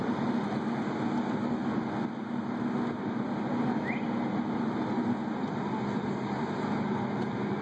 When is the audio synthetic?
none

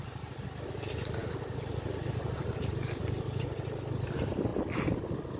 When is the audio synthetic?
none

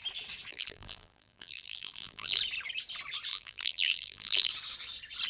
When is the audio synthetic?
0.5-2.4 (vocoder, BigVGAN v2); 3.3-4.5

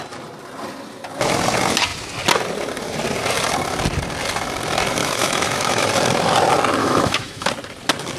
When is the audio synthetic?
5.0-5.9 (autoencoder, DAC-VAE); 6.8-7.5

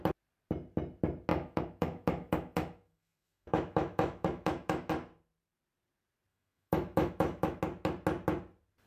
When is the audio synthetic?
1.3-4.9 (autoencoder, DAC-VAE); 6.3-7.6

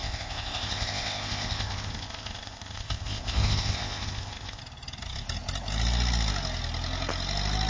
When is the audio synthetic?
0.0-4.6 (codec, ZipCodec)